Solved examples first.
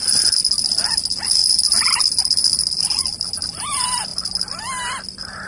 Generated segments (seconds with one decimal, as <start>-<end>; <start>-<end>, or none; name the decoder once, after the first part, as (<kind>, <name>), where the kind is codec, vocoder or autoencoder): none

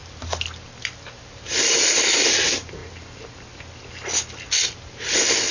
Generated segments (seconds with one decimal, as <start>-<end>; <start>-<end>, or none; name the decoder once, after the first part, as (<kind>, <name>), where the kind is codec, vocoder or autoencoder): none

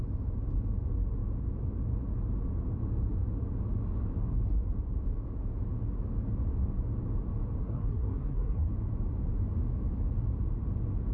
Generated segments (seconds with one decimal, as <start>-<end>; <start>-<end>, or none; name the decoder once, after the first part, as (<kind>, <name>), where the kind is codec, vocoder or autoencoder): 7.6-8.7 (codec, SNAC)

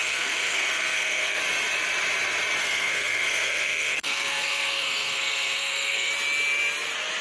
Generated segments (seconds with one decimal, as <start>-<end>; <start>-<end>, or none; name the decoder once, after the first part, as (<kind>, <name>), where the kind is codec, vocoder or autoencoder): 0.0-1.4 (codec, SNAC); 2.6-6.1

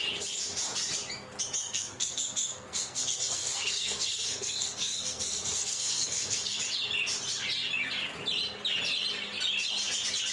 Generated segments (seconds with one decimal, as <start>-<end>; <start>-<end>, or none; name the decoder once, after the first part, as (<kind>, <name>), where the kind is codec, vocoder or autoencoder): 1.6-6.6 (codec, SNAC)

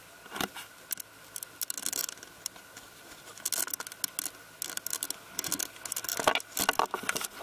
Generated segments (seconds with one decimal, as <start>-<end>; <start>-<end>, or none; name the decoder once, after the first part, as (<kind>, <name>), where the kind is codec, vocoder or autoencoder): none

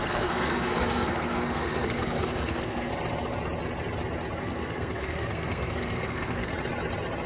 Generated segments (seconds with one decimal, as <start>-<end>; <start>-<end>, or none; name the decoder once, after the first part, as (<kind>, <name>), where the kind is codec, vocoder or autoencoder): 0.0-2.9 (codec, SNAC); 4.4-6.5